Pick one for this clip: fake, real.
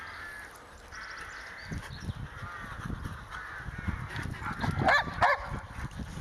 real